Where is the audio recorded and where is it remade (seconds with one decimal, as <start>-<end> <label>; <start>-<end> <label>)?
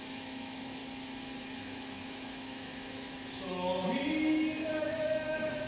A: 0.0-0.8 remade; 0.8-1.4 recorded; 1.4-3.7 remade; 3.7-4.8 recorded; 4.8-5.7 remade